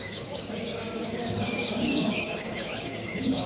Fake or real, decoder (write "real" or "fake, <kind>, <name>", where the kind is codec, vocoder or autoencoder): fake, codec, DAC